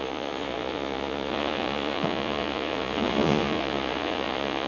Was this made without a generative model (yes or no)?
no